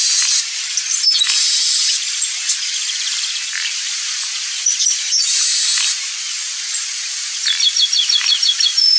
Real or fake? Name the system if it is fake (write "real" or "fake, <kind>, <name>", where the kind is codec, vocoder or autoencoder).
real